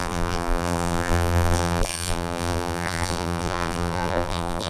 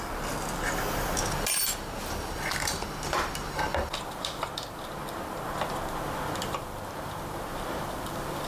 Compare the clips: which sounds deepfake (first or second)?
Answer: first